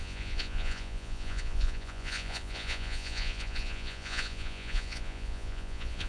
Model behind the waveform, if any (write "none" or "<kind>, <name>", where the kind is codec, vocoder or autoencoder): vocoder, Vocos